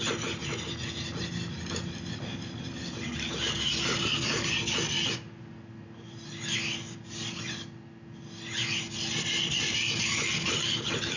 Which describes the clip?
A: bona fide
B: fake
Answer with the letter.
A